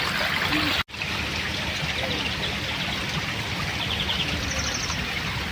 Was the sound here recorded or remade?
recorded